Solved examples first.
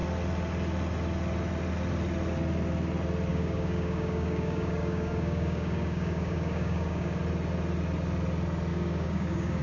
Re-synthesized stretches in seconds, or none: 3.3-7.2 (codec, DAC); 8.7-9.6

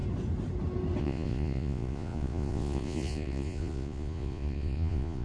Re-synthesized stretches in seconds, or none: 1.0-5.2 (vocoder, Vocos)

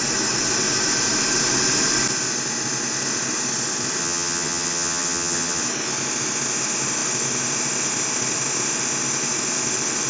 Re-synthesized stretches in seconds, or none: 4.0-5.6 (vocoder, HiFi-GAN)

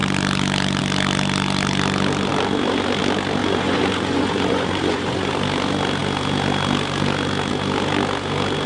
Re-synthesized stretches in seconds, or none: 3.4-5.3 (vocoder, Vocos)

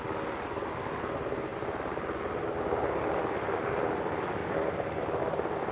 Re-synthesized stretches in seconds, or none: 1.5-2.2 (vocoder, BigVGAN v2); 4.4-5.2